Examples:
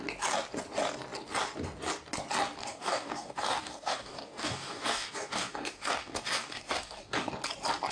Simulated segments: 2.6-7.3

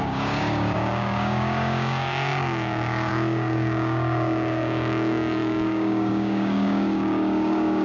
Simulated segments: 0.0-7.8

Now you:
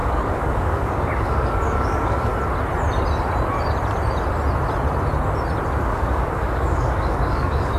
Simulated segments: 0.0-2.3; 5.8-7.8